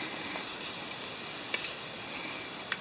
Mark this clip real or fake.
real